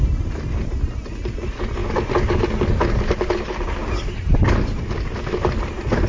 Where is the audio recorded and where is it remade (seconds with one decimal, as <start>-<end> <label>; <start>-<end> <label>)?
0.0-6.1 recorded